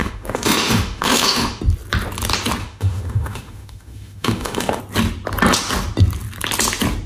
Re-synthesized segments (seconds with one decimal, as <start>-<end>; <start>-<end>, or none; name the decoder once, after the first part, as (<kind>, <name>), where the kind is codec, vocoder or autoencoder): 0.0-1.6 (autoencoder, DAC-VAE); 2.6-4.8